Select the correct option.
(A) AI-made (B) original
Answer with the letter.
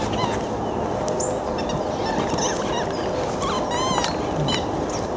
B